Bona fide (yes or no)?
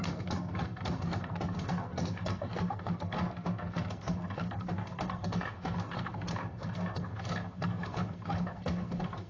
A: no